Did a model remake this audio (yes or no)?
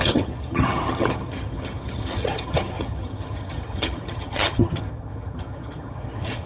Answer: yes